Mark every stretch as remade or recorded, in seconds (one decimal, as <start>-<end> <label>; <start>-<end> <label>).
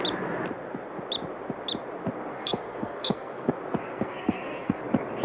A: 0.0-2.3 recorded; 2.3-3.5 remade; 3.5-3.9 recorded; 3.9-4.8 remade; 4.8-5.2 recorded